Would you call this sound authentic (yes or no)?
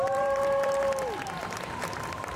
no